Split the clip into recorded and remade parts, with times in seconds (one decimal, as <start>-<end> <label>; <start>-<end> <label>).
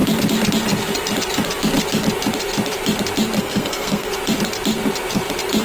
0.0-3.4 recorded; 3.4-4.1 remade; 4.1-5.6 recorded